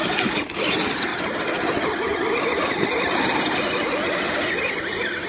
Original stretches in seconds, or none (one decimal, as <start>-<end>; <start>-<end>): 0.0-1.1; 2.4-5.3